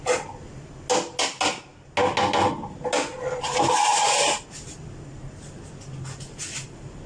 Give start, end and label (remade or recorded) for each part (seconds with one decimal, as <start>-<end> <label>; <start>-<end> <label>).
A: 0.0-7.1 recorded